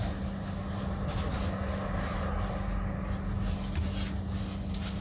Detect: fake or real real